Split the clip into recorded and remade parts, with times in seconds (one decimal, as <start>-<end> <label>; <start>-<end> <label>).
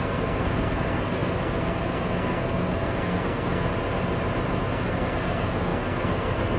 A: 0.0-3.7 remade; 3.7-4.6 recorded; 4.6-6.6 remade